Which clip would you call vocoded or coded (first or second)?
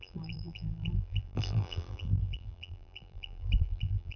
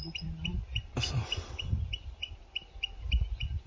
first